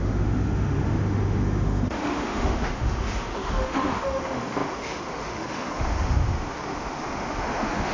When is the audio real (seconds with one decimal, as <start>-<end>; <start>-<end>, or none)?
none